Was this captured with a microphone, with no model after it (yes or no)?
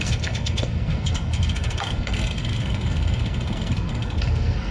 no